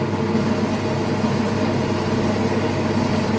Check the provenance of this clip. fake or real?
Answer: real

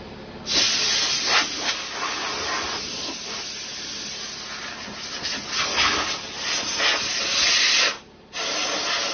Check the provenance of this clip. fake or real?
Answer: real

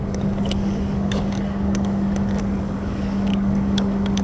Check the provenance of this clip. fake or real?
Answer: fake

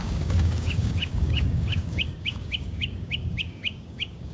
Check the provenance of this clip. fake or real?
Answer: fake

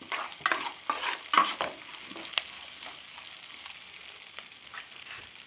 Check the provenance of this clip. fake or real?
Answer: real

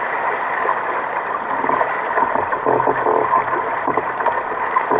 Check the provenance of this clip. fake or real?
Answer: real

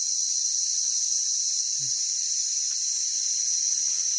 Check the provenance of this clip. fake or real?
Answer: real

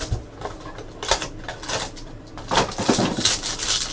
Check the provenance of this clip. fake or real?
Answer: real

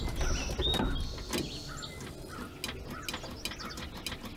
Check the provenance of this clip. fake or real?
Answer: real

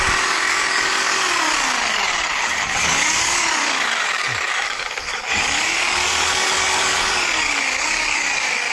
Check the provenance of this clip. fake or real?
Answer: fake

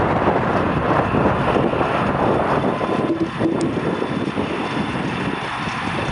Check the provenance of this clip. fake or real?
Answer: real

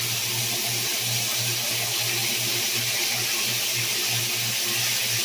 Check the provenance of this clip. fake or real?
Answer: real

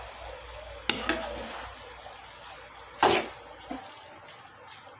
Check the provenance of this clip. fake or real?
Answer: real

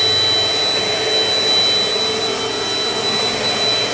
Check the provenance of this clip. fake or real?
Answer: real